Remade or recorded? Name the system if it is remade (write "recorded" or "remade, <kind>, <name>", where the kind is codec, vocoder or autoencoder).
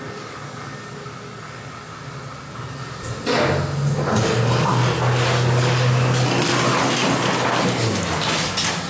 recorded